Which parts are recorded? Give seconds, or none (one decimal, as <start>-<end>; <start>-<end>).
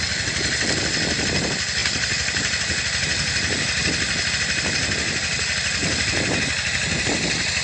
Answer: 0.0-7.6